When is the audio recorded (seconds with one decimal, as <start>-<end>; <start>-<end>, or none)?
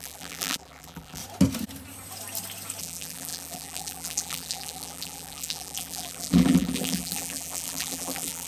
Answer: 1.2-2.8